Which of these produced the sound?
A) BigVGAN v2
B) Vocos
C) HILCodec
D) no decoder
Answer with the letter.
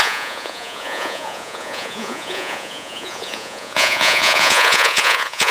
B